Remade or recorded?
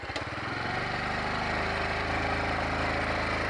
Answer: recorded